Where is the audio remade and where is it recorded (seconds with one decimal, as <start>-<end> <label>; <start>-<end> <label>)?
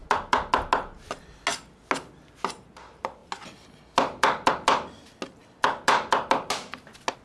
0.0-7.2 recorded